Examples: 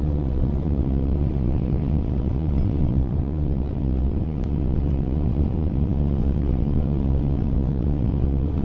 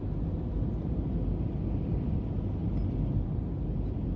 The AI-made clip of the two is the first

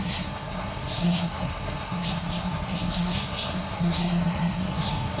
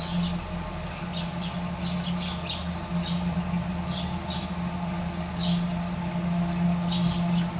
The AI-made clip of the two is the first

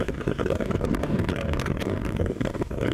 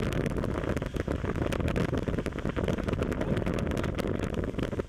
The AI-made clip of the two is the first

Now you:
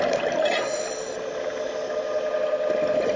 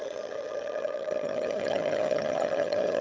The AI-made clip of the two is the second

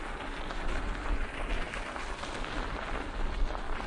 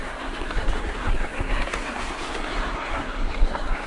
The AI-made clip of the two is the second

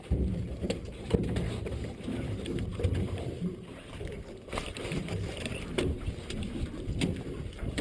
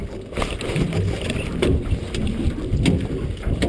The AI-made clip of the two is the first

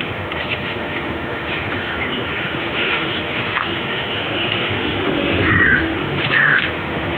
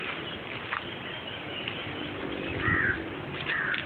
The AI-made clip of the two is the first